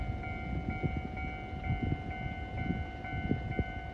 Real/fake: real